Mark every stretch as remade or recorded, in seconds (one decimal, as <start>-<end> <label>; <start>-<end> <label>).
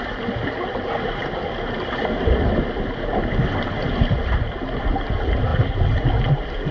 0.0-6.7 recorded